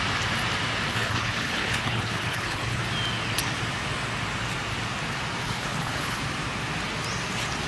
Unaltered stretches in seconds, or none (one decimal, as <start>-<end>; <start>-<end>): 0.0-0.9; 2.8-5.4; 6.2-7.7